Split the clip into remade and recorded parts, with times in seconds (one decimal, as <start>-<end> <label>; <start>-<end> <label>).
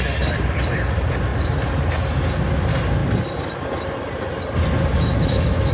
0.0-4.9 recorded; 4.9-5.7 remade